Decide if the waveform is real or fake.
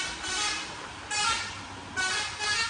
real